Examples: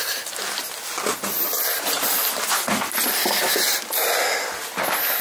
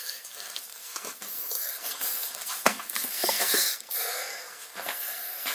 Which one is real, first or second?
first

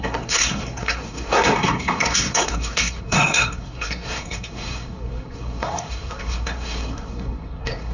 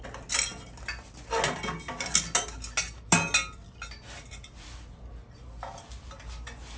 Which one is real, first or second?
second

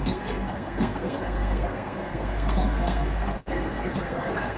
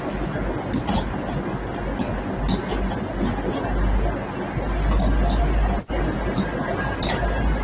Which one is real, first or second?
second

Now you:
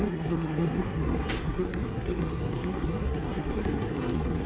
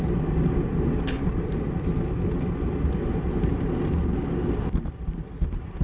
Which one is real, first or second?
second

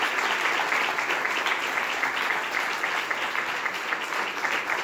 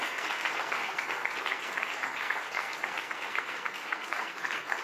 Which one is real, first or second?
first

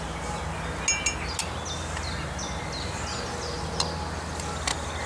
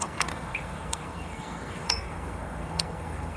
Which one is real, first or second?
first